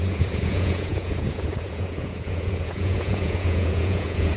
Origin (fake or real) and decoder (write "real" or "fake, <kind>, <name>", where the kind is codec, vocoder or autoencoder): fake, vocoder, Vocos